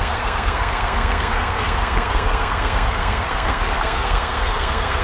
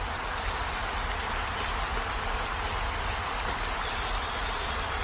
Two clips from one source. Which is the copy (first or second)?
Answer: first